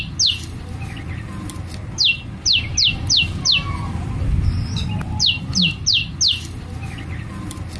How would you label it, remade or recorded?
recorded